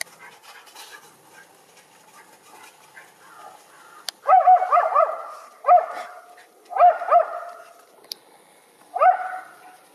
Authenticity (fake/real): real